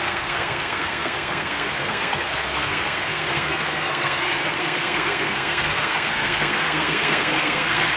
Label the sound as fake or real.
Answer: fake